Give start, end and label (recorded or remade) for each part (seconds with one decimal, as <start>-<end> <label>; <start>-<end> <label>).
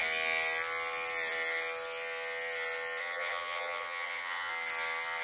0.0-3.0 recorded; 3.0-4.5 remade; 4.5-5.2 recorded